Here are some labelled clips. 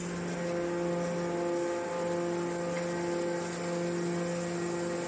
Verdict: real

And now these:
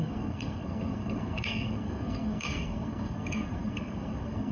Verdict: fake